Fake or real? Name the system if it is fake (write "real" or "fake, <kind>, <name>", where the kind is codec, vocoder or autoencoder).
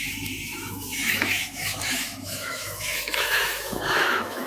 fake, autoencoder, DAC-VAE